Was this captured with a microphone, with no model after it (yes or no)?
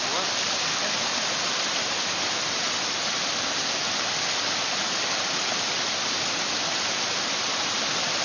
yes